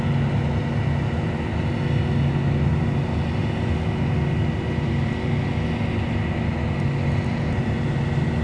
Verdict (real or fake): real